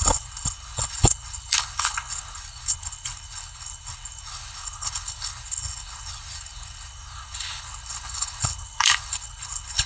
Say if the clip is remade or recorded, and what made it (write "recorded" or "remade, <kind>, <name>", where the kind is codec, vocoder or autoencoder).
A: remade, codec, HILCodec